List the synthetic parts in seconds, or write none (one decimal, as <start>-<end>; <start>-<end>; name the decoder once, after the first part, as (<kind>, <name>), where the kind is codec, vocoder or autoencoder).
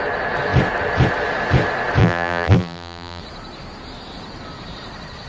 2.0-3.2 (vocoder, BigVGAN v2)